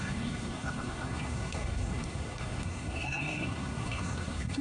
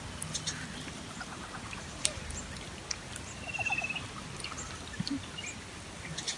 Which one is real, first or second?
second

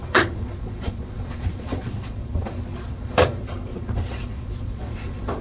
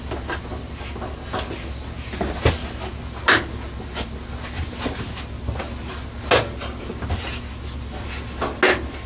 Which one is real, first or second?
second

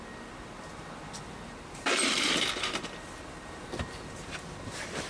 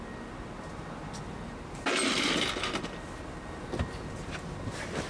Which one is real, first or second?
second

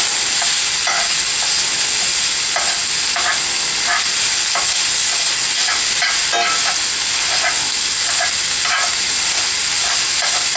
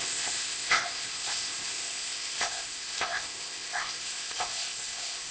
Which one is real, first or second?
first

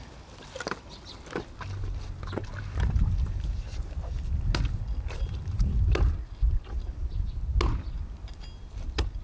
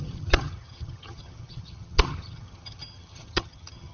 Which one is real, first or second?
first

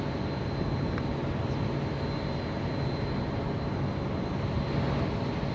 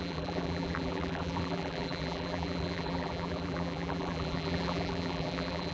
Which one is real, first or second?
first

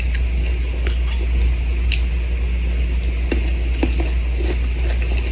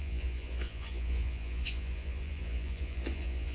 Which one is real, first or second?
first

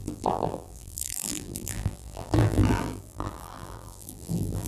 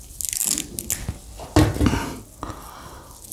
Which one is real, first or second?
second